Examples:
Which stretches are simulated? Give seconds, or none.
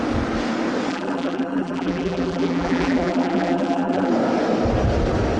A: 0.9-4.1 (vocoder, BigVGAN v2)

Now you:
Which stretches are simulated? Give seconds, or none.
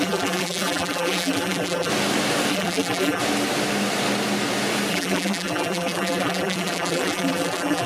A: 0.0-1.9 (vocoder, BigVGAN v2); 2.5-3.2; 4.9-7.9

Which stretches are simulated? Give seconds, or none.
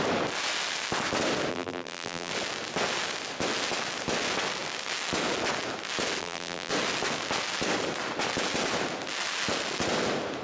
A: 1.5-2.3 (vocoder, BigVGAN v2); 6.2-6.7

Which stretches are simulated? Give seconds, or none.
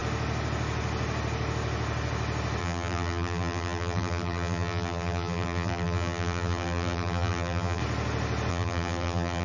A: 2.6-7.8 (vocoder, BigVGAN v2); 8.5-9.4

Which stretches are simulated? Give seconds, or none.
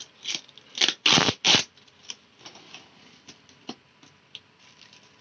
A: none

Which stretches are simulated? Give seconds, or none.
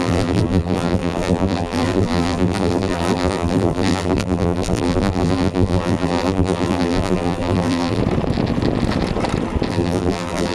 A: 0.0-8.0 (vocoder, BigVGAN v2); 9.7-10.5